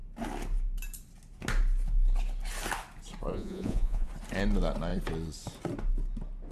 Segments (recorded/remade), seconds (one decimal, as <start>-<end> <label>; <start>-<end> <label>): 0.0-3.3 recorded; 3.3-4.1 remade; 4.1-6.5 recorded